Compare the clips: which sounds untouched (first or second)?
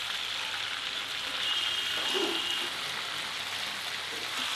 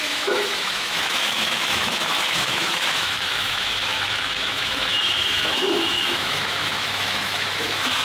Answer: first